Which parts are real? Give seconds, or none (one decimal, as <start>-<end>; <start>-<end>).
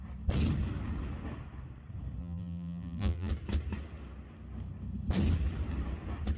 0.0-2.2; 3.3-6.4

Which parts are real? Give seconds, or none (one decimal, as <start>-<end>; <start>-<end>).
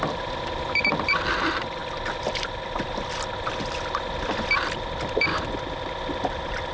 5.3-6.0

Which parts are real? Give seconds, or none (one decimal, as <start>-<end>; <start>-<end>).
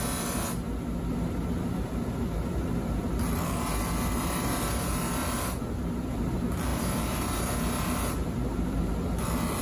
0.0-4.2; 5.3-6.7; 8.3-9.6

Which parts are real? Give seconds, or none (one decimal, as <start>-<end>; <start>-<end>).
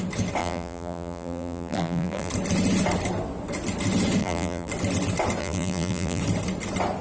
0.0-0.4; 2.3-4.2; 4.7-5.4; 6.2-7.0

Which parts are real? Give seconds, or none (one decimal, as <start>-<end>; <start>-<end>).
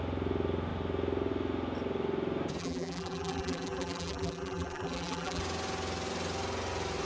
0.0-2.6; 5.4-7.0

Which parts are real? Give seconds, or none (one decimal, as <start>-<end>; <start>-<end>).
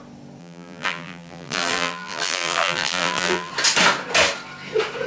0.0-0.4; 3.5-5.1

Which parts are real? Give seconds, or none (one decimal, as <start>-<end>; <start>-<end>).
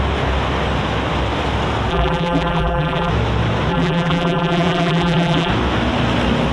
0.0-1.9; 3.1-3.7; 5.5-6.5